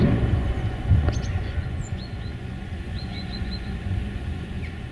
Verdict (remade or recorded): remade